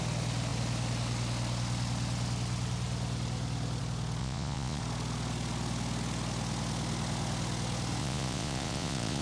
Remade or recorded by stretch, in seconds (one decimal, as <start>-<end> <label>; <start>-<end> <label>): 0.0-4.2 recorded; 4.2-4.8 remade; 4.8-8.0 recorded; 8.0-9.2 remade